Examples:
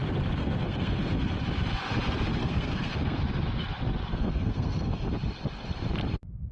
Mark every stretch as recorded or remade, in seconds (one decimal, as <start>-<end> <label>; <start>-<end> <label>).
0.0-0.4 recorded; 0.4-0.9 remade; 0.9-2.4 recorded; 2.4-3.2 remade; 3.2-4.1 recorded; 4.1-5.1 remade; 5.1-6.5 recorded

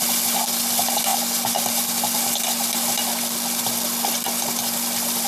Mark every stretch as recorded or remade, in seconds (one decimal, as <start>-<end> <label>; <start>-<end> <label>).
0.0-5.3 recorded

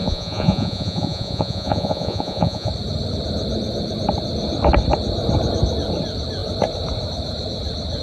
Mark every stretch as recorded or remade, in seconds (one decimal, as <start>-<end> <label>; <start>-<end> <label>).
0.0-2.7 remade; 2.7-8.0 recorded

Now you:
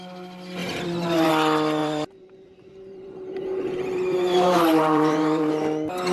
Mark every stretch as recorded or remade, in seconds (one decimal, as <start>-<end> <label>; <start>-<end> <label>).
0.0-0.6 recorded; 0.6-1.3 remade; 1.3-1.8 recorded; 1.8-5.5 remade; 5.5-6.1 recorded

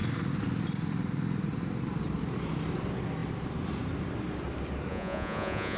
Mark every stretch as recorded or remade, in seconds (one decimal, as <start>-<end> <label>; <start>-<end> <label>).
0.0-4.9 recorded; 4.9-5.8 remade

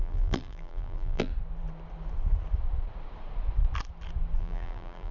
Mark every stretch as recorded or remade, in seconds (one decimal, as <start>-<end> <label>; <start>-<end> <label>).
0.0-1.3 remade; 1.3-4.4 recorded; 4.4-5.1 remade